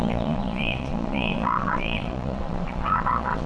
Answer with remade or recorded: remade